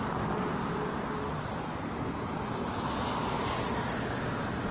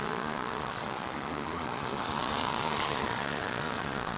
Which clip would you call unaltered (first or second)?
first